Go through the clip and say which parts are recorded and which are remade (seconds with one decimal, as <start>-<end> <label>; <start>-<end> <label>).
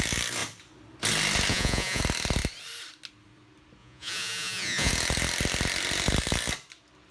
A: 0.0-1.5 recorded; 1.5-2.0 remade; 2.0-3.8 recorded; 3.8-4.9 remade; 4.9-7.1 recorded